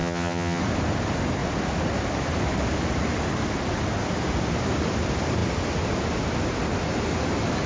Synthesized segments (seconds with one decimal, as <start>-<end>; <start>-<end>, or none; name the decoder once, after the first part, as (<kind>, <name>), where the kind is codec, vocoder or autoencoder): 0.0-0.6 (vocoder, HiFi-GAN)